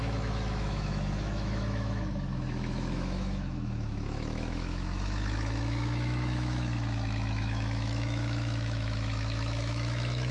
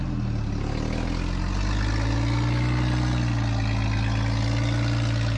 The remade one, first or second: first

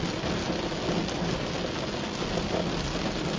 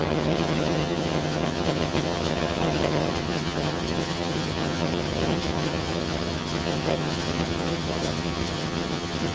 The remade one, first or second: second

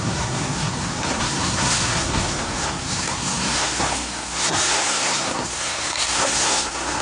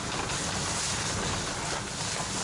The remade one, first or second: first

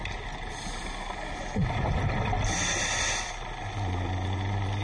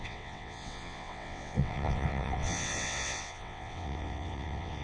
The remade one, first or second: second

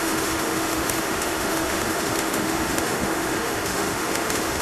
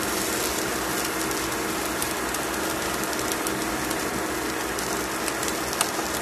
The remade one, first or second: first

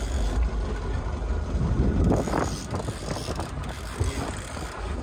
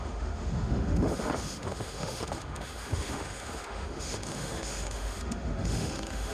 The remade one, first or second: second